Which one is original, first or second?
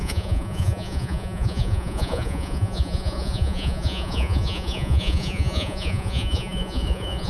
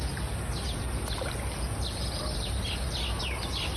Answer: second